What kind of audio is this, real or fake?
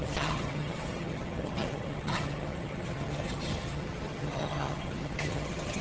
fake